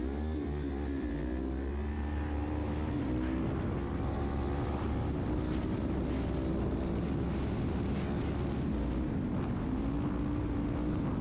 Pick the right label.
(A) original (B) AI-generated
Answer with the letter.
A